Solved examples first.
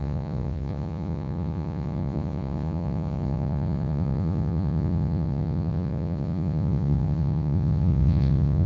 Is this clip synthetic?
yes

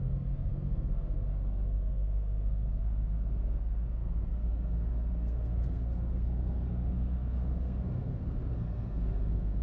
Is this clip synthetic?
yes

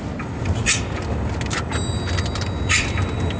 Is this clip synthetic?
no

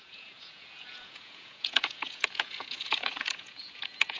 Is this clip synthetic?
yes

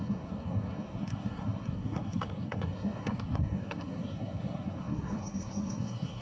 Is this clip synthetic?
yes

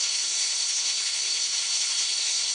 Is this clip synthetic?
yes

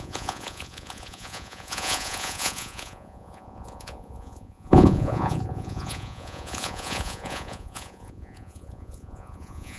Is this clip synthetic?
yes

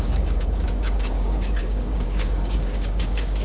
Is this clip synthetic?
yes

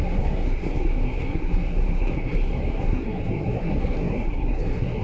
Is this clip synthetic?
yes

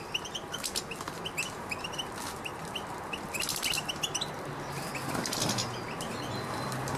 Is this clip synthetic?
no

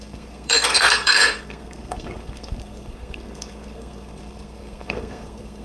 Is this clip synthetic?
yes